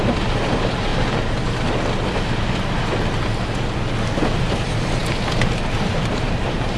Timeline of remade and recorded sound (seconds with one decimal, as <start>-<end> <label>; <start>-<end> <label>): 0.0-0.9 remade; 0.9-4.4 recorded; 4.4-5.0 remade; 5.0-5.9 recorded; 5.9-6.8 remade